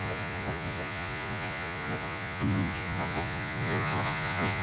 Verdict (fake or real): fake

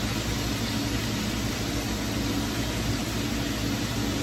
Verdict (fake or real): real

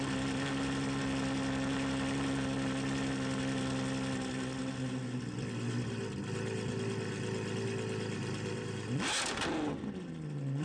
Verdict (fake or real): real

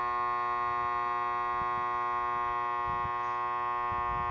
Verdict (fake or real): real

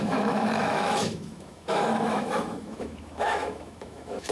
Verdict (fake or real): fake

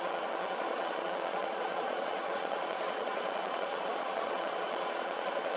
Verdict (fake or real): fake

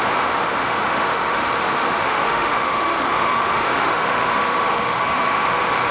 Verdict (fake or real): fake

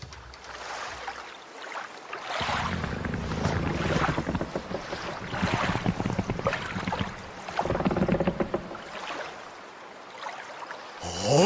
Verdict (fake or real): real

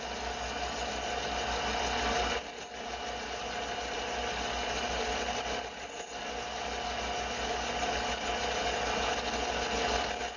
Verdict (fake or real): real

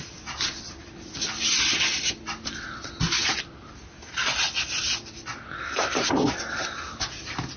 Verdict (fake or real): real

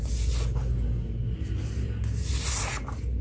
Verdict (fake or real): real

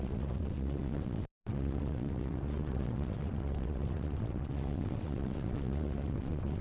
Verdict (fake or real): fake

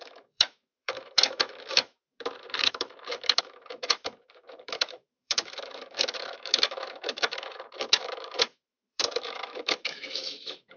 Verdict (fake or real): fake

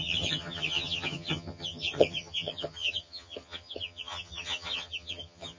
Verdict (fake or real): fake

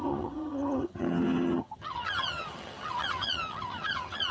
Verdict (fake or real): fake